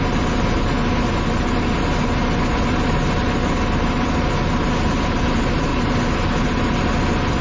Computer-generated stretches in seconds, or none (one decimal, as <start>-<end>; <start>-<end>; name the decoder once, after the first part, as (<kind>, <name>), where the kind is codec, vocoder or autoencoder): none